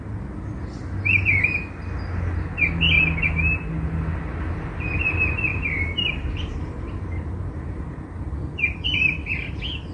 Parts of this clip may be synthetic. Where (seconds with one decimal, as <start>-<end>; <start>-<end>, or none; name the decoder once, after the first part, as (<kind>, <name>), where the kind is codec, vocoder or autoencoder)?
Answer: 5.5-8.0 (vocoder, BigVGAN v2)